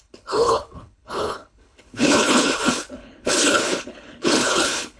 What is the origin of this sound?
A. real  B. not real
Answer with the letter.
B